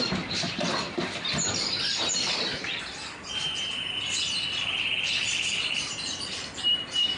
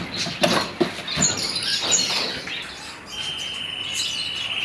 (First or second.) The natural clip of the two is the second